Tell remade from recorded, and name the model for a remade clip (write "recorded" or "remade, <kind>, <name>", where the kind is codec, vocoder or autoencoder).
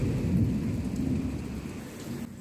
recorded